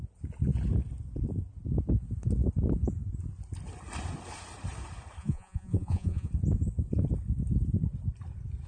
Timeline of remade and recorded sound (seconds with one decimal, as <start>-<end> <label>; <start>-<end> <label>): 0.0-5.2 recorded; 5.2-6.3 remade; 6.3-8.7 recorded